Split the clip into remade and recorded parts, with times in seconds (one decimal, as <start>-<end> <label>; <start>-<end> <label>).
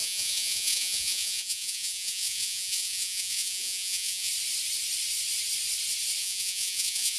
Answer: 0.0-4.3 remade; 4.3-6.2 recorded; 6.2-7.2 remade